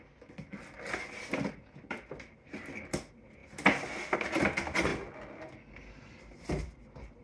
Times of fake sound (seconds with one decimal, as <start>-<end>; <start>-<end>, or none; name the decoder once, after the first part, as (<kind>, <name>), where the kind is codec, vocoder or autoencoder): none